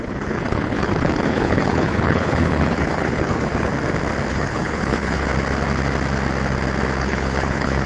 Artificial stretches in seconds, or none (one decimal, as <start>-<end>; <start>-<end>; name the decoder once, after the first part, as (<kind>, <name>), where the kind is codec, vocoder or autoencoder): 0.0-3.7 (codec, HILCodec); 4.3-5.3; 7.0-7.9